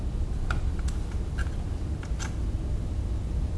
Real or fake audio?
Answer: real